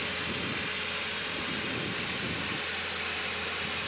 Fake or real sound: real